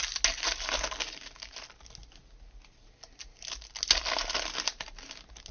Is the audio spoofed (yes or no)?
no